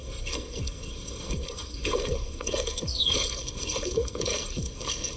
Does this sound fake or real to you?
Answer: fake